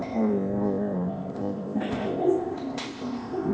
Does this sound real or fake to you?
fake